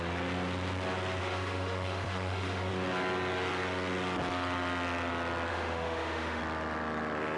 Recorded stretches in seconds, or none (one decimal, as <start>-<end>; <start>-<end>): 0.0-1.2; 2.7-5.5; 6.4-7.4

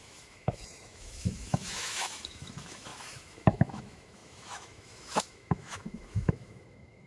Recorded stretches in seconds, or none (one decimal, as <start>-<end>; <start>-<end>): none